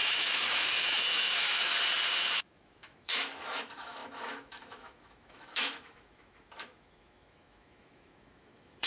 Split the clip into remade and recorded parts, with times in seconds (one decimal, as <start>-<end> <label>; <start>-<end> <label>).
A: 0.0-1.7 remade; 1.7-2.3 recorded; 2.3-8.9 remade